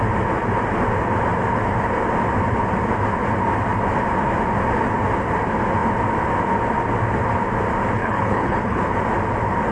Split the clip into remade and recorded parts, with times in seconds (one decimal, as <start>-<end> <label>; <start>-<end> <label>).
0.0-8.0 recorded; 8.0-8.8 remade; 8.8-9.7 recorded